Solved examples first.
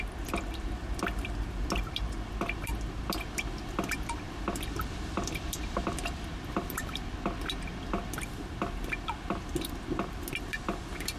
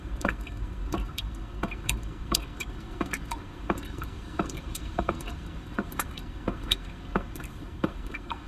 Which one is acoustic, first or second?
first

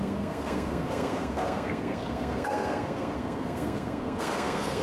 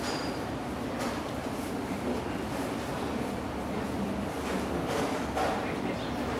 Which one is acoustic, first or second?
second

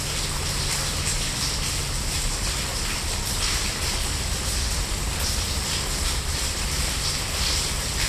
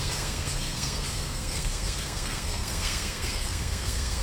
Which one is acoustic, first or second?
first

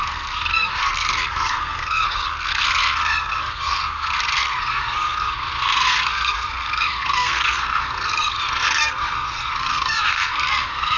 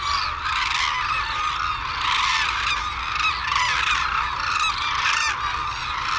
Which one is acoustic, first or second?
second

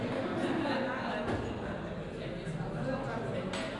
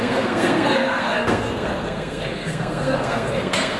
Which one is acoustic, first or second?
first